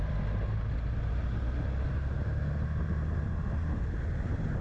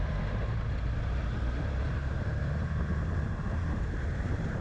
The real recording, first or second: first